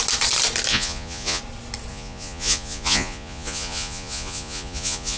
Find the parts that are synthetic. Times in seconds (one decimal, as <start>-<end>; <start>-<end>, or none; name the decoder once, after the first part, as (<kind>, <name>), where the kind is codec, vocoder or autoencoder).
0.7-1.4 (vocoder, Vocos); 1.9-5.2

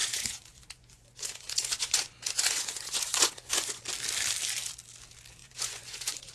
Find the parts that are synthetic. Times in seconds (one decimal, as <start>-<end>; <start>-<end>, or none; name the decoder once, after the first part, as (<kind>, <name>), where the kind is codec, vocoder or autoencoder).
0.0-3.8 (vocoder, Vocos); 5.4-6.3

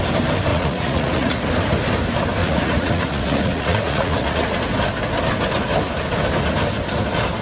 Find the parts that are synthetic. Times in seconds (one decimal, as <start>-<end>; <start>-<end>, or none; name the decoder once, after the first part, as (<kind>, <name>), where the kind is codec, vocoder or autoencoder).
0.5-1.4 (vocoder, Vocos); 2.4-4.6

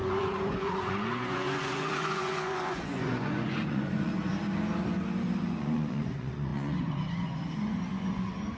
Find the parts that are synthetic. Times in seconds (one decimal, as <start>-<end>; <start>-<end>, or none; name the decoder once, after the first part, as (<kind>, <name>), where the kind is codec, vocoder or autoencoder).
0.0-4.3 (vocoder, Vocos); 5.4-8.6

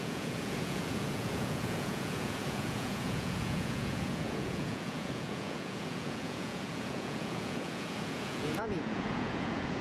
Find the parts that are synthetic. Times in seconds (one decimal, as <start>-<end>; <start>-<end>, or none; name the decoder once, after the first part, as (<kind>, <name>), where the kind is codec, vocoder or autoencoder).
0.0-9.8 (vocoder, Vocos)

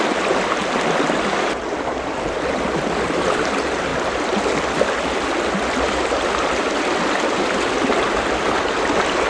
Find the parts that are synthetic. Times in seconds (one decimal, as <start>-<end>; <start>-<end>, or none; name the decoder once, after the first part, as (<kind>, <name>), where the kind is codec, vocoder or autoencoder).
none

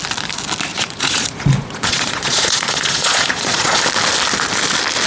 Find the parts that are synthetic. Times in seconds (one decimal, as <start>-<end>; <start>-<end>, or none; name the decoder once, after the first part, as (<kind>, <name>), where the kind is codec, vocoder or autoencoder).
0.7-3.8 (vocoder, Vocos)